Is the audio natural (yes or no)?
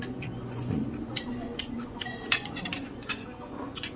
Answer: no